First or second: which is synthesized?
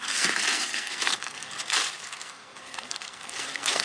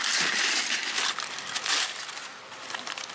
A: first